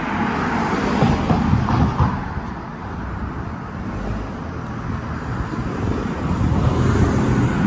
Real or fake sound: real